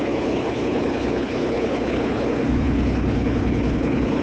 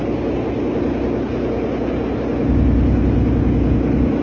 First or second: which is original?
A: second